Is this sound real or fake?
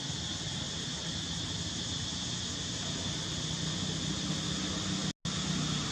real